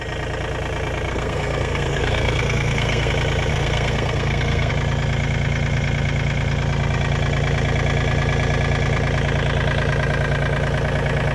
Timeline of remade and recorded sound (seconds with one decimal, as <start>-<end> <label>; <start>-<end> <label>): 0.0-1.1 recorded; 1.1-3.1 remade; 3.1-3.5 recorded; 3.5-4.7 remade; 4.7-11.3 recorded